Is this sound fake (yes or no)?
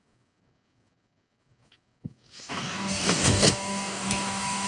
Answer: yes